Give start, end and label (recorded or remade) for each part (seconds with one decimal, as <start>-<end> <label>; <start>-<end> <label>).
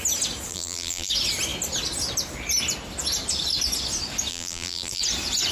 0.0-0.5 recorded; 0.5-1.1 remade; 1.1-4.3 recorded; 4.3-5.0 remade; 5.0-5.5 recorded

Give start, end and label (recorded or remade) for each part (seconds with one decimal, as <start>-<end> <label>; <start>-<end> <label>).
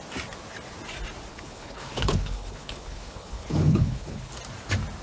0.0-1.3 recorded; 1.3-4.3 remade; 4.3-5.0 recorded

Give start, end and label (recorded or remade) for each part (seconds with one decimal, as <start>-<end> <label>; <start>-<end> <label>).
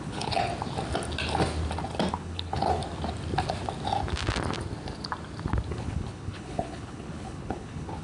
0.0-0.5 remade; 0.5-2.1 recorded; 2.1-2.8 remade; 2.8-5.7 recorded; 5.7-8.0 remade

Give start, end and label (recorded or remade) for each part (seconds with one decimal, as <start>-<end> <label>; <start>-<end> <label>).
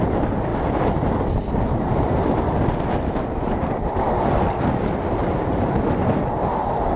0.0-5.2 recorded; 5.2-6.2 remade; 6.2-7.0 recorded